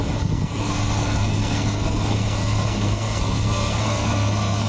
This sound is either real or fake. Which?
fake